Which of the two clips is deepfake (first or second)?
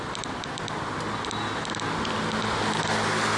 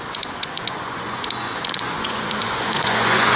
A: second